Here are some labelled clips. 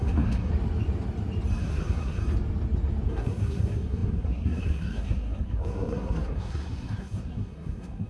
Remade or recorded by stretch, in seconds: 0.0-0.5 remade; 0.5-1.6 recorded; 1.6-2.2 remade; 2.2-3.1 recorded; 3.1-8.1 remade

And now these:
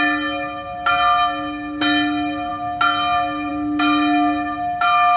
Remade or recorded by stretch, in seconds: 0.0-5.2 recorded

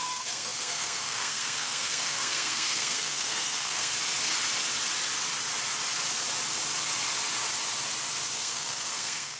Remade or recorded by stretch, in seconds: 0.0-3.9 remade; 3.9-8.4 recorded; 8.4-9.4 remade